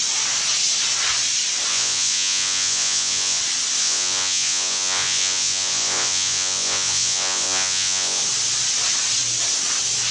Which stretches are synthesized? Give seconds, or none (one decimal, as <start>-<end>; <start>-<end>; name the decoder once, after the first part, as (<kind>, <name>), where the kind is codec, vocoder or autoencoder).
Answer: 1.7-3.4 (vocoder, Vocos); 3.8-8.2